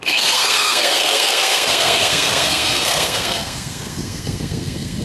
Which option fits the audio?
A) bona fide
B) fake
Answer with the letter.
B